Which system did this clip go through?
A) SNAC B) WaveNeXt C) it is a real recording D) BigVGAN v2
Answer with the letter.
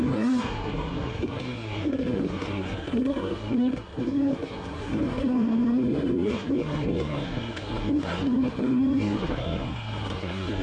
A